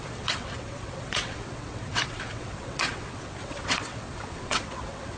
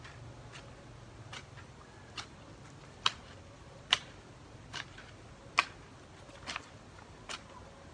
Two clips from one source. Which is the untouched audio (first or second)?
second